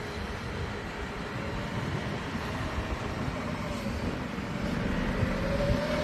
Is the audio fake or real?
real